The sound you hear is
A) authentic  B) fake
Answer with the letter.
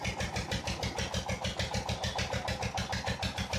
A